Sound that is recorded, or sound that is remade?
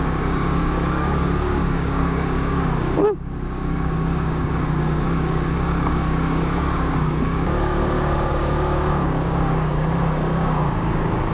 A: remade